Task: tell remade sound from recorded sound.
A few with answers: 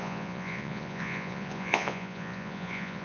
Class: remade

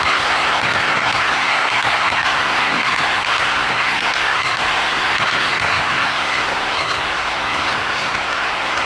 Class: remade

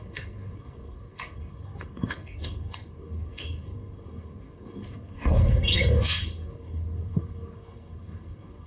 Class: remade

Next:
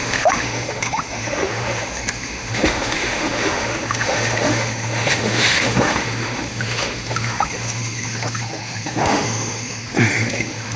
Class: remade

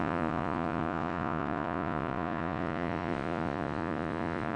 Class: remade